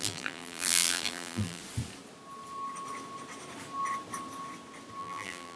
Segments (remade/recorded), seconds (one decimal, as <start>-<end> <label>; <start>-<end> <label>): 0.0-1.6 remade; 1.6-5.0 recorded; 5.0-5.6 remade